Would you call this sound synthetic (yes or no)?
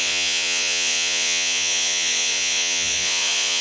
yes